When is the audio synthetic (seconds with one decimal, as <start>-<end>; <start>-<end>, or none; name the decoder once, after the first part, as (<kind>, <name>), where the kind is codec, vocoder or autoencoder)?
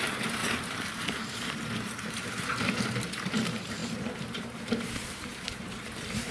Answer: 0.0-6.3 (vocoder, BigVGAN v2)